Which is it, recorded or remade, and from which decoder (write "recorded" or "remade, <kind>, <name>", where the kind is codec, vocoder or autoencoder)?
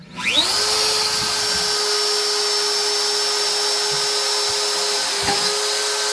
recorded